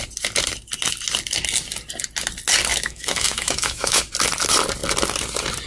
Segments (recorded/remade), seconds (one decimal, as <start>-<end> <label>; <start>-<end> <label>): 0.0-2.7 recorded; 2.7-4.0 remade; 4.0-5.7 recorded